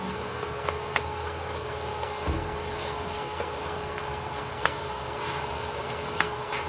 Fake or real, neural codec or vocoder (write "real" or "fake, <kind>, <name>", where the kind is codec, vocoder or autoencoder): fake, codec, SNAC